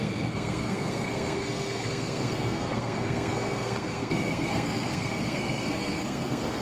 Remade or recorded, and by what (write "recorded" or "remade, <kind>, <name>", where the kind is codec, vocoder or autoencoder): remade, codec, SNAC